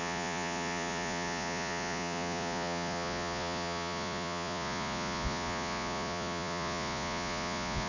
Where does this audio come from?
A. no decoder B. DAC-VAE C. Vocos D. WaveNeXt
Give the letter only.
C